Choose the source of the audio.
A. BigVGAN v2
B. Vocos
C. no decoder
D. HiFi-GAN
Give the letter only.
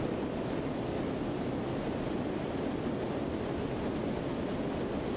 C